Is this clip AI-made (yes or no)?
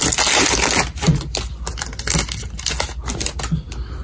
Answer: no